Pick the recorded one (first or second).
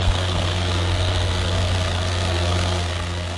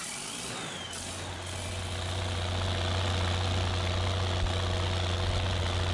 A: second